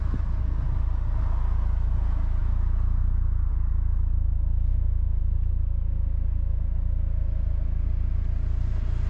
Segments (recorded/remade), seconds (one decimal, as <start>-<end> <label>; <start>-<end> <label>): 0.0-4.7 recorded; 4.7-5.2 remade; 5.2-9.1 recorded